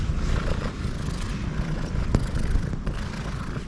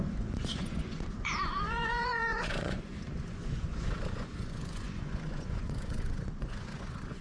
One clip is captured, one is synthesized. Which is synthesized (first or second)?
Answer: second